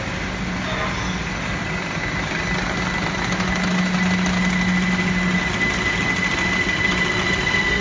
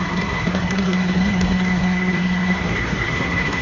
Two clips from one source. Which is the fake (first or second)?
second